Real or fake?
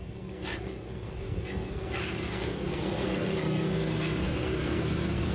fake